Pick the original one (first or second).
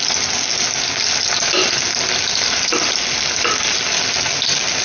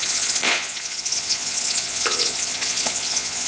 first